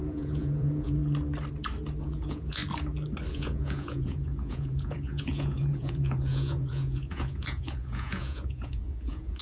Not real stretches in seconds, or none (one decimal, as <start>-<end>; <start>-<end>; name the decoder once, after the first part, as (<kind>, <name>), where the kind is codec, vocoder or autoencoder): 0.0-1.0 (vocoder, Vocos); 2.0-2.6; 3.3-9.4